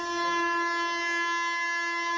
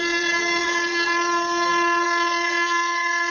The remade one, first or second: second